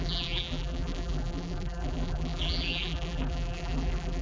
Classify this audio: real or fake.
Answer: fake